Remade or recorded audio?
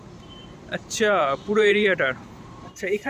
remade